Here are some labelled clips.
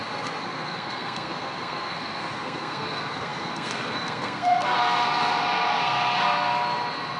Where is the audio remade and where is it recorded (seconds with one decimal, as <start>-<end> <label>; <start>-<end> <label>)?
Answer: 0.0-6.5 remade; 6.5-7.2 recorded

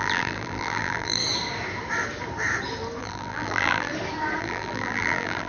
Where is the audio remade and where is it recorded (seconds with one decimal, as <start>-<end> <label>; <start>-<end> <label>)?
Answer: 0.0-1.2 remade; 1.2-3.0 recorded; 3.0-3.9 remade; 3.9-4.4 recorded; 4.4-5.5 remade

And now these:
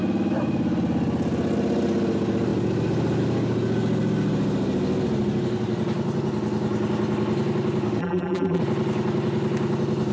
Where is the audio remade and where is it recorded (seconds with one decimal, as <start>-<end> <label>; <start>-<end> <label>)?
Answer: 0.0-8.0 recorded; 8.0-8.6 remade; 8.6-10.1 recorded